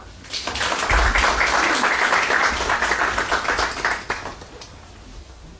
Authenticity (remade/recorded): recorded